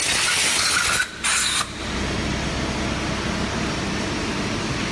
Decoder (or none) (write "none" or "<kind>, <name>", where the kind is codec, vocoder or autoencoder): none